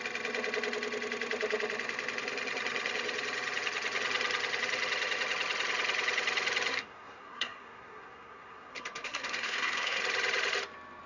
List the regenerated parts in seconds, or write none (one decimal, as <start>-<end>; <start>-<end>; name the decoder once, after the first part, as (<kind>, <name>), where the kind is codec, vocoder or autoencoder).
6.7-10.0 (codec, SNAC)